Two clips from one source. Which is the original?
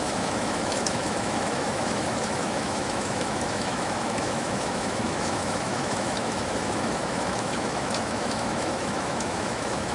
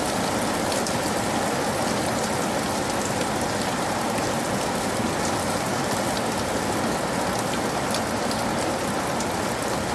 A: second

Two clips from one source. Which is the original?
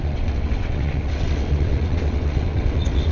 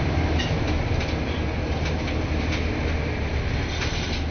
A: second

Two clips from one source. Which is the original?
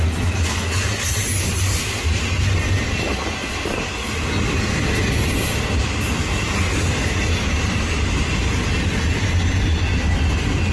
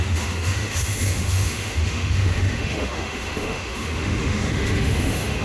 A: first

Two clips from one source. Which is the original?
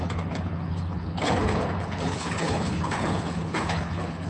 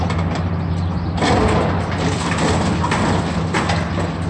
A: second